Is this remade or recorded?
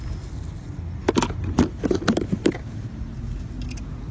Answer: recorded